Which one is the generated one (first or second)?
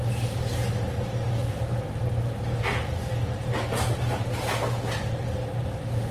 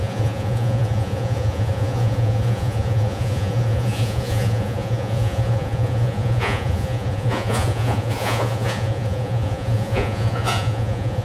second